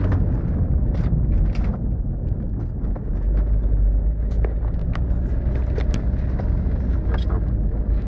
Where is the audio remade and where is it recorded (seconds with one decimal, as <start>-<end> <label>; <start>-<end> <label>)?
0.0-8.1 recorded